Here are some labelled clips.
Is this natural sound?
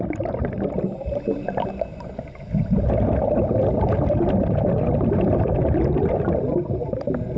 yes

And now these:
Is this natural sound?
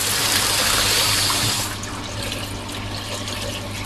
yes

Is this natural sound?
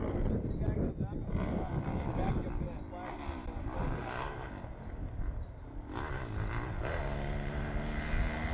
yes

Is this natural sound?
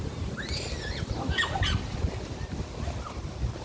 yes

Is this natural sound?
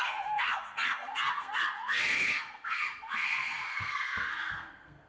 no